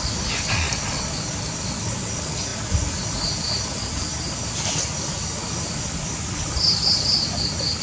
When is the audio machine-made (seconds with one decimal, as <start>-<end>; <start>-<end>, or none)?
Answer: none